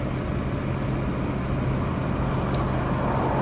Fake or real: real